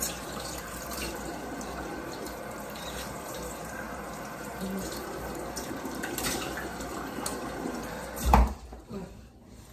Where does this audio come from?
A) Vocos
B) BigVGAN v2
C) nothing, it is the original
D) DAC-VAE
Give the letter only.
B